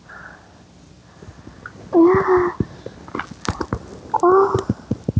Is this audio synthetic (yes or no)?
no